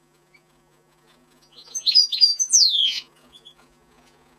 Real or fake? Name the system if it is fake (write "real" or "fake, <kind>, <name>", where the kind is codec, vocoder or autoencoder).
fake, vocoder, Vocos